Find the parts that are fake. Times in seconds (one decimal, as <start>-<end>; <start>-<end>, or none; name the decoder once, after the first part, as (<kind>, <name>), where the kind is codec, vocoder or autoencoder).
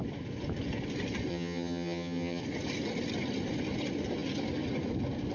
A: 1.3-2.4 (vocoder, HiFi-GAN)